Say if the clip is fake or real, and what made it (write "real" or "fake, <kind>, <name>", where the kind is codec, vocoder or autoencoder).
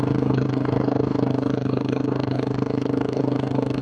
fake, codec, DAC